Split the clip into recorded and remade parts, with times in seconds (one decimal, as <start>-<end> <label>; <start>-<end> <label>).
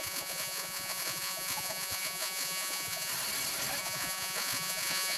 0.0-3.1 remade; 3.1-3.8 recorded; 3.8-5.2 remade